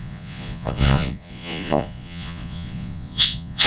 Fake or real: fake